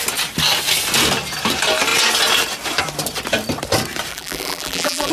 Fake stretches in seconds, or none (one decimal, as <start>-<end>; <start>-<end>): 4.1-5.1